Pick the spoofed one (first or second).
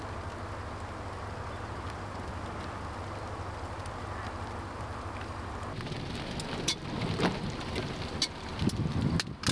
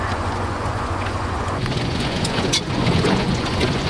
second